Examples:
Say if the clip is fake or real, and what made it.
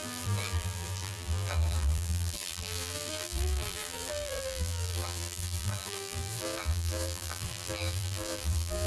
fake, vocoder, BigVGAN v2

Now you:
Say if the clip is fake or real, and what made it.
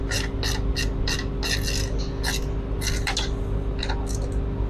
real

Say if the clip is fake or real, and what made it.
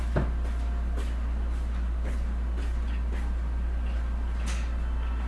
real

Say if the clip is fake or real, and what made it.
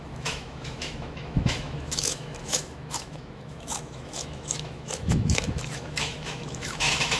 fake, autoencoder, DAC-VAE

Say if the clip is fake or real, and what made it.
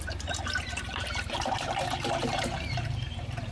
fake, vocoder, BigVGAN v2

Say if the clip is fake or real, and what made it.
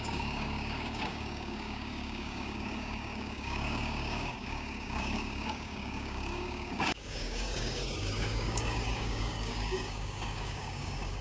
fake, codec, DAC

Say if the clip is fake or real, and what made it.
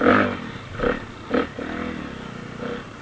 real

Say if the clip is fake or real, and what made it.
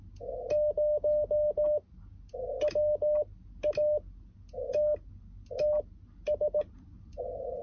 real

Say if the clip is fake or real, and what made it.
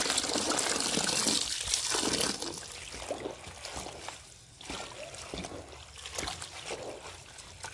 real